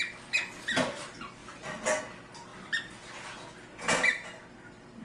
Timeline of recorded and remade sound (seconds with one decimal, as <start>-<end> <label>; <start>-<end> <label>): 0.0-5.0 recorded